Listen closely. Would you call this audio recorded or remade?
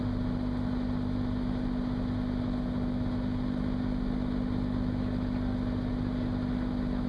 recorded